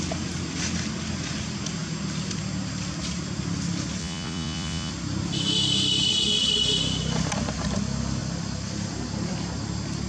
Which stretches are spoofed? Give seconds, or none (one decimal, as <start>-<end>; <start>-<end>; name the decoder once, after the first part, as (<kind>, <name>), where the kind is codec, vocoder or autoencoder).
4.0-4.9 (vocoder, Vocos)